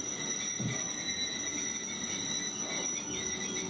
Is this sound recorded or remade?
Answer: recorded